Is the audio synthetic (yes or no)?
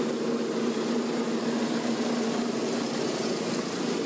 no